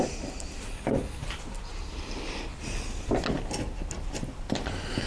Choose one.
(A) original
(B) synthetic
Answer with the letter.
A